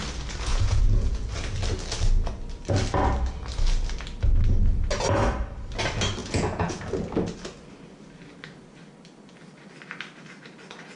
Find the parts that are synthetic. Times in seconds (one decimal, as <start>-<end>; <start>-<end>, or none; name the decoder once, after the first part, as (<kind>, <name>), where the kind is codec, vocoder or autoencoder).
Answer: 0.5-1.2 (vocoder, Vocos); 6.2-6.8